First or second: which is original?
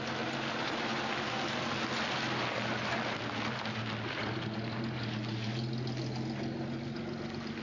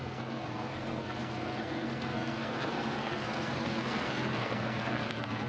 first